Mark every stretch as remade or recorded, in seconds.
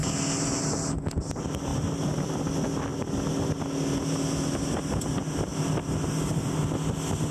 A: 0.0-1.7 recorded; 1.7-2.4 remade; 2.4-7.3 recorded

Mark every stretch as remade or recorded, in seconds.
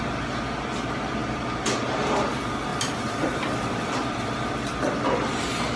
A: 0.0-2.7 recorded; 2.7-5.0 remade; 5.0-5.8 recorded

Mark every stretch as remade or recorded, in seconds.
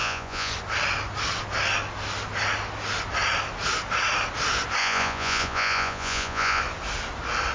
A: 0.0-0.5 remade; 0.5-4.8 recorded; 4.8-6.6 remade; 6.6-7.5 recorded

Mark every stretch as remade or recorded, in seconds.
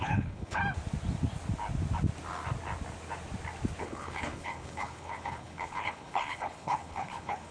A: 0.0-0.6 remade; 0.6-3.8 recorded; 3.8-7.5 remade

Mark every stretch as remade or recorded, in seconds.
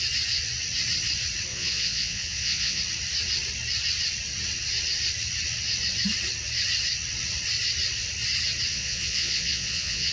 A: 0.0-1.5 recorded; 1.5-2.8 remade; 2.8-8.7 recorded; 8.7-10.1 remade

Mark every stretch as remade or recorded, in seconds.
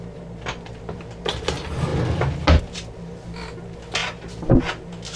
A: 0.0-5.2 recorded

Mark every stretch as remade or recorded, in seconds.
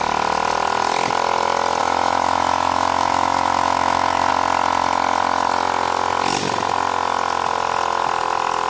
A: 0.0-1.8 recorded; 1.8-4.3 remade; 4.3-8.7 recorded